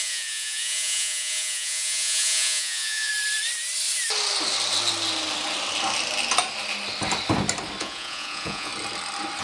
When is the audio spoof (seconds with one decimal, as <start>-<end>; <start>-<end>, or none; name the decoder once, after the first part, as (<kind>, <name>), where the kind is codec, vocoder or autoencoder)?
0.0-3.1 (vocoder, Vocos); 7.8-8.7